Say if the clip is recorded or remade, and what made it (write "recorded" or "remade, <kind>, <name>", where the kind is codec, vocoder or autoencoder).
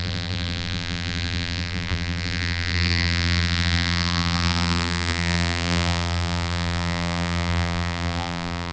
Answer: remade, vocoder, BigVGAN v2